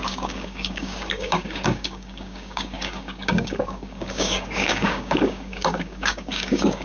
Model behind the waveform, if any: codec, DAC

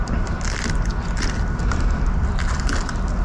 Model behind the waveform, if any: none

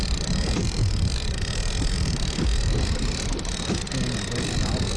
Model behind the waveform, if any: none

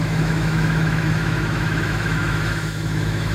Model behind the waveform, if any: autoencoder, DAC-VAE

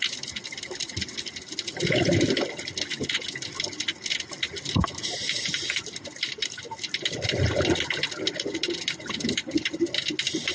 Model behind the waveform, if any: none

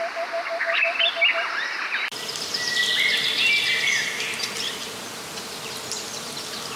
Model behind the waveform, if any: none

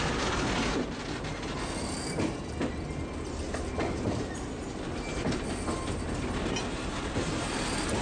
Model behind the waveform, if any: none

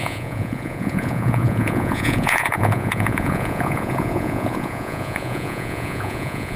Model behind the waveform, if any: vocoder, Vocos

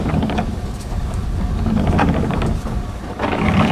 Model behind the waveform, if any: codec, DAC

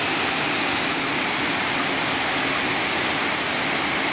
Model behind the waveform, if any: none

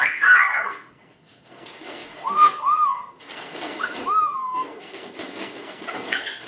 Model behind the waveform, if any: codec, SNAC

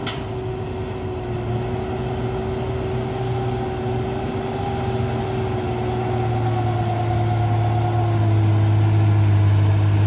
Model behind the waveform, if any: none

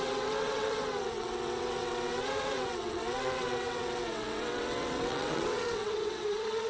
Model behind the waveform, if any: vocoder, WaveNeXt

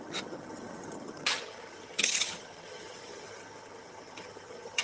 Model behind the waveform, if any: vocoder, HiFi-GAN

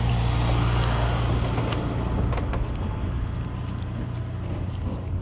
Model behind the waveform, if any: none